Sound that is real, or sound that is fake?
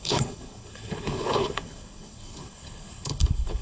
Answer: fake